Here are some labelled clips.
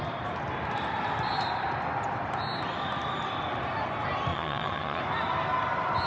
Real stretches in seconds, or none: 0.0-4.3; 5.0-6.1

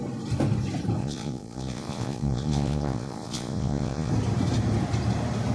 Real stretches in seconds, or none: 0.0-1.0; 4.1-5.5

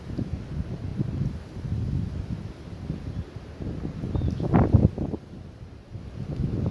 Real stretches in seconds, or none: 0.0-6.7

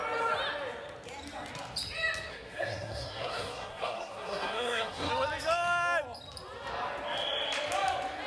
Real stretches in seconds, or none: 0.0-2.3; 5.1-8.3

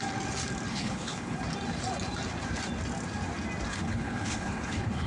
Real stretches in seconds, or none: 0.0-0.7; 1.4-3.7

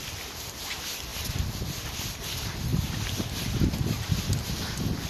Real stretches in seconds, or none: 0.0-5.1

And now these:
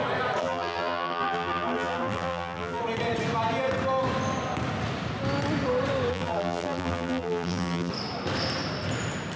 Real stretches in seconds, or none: 0.0-0.4; 2.8-6.1; 7.9-9.4